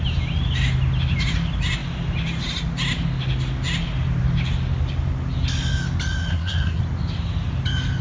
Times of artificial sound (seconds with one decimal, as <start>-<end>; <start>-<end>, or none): 6.3-6.8